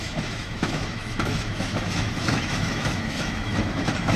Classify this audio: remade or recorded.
remade